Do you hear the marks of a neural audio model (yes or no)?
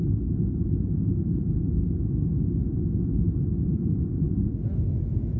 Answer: no